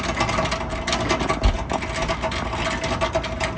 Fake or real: real